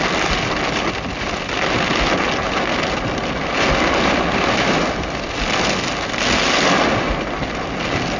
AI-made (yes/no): no